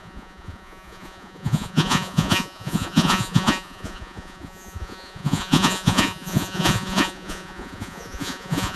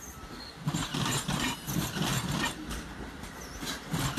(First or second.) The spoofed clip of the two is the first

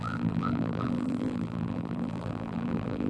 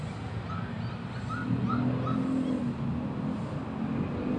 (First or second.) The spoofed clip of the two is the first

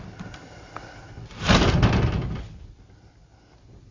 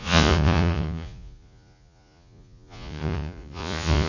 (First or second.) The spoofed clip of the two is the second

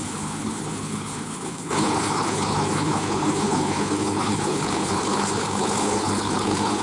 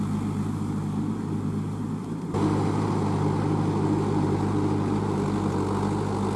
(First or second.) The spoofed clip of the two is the first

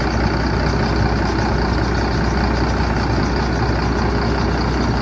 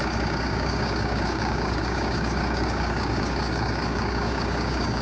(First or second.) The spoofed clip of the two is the second